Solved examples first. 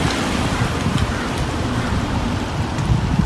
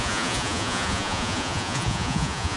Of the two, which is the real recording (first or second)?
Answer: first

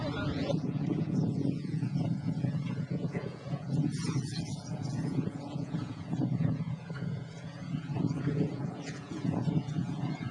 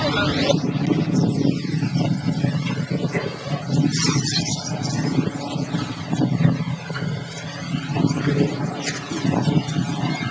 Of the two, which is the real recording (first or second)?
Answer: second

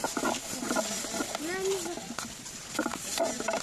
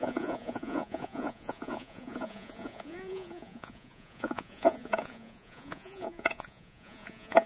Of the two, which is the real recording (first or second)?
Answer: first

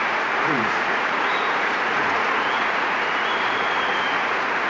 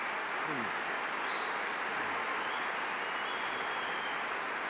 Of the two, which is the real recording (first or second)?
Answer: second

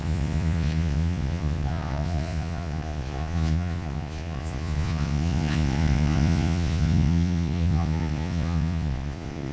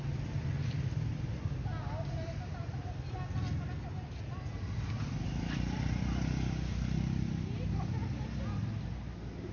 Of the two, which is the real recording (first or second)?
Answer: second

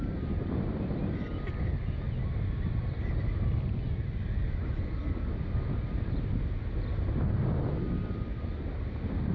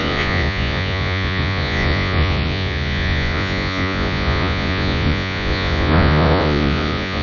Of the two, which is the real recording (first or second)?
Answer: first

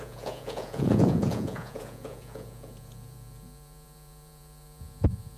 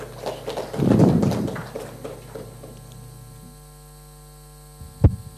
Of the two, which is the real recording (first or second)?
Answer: second